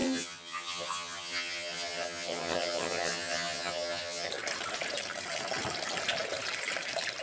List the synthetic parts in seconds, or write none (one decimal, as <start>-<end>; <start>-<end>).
0.0-4.3